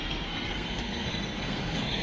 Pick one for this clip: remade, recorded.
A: remade